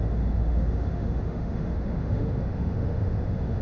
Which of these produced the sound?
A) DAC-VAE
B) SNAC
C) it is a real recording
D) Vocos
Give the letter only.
A